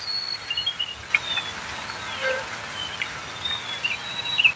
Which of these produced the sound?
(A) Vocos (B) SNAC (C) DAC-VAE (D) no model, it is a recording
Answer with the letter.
D